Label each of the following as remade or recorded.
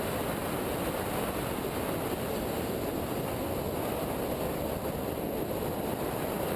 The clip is recorded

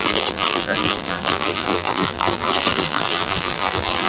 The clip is remade